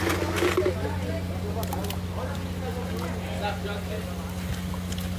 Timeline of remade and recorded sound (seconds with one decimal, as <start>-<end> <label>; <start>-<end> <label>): 0.0-5.2 recorded